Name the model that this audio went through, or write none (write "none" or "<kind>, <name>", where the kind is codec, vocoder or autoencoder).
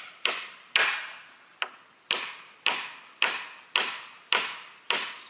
none